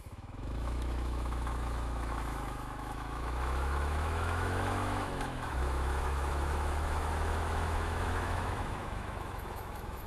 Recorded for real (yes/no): no